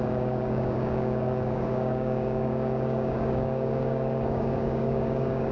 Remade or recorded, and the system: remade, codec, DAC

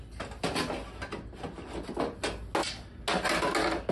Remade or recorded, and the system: recorded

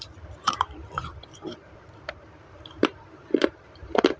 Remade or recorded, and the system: remade, vocoder, BigVGAN v2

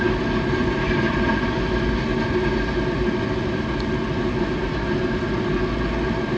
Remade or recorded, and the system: recorded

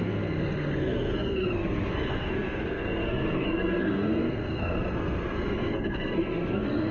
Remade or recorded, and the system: remade, codec, SNAC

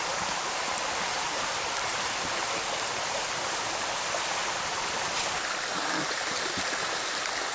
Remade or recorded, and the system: recorded